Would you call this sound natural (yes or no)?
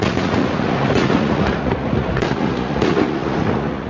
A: no